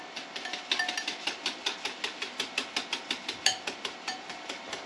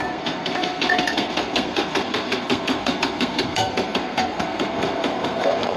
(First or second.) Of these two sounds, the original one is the first